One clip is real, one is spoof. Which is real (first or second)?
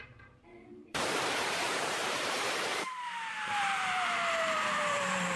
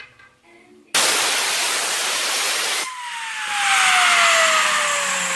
second